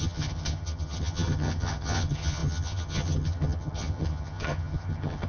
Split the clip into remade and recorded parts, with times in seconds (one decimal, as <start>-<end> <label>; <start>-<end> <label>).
0.0-5.3 remade